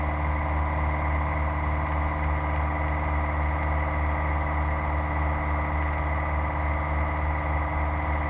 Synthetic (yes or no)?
no